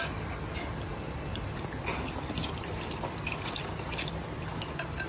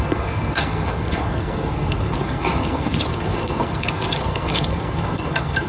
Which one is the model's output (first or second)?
second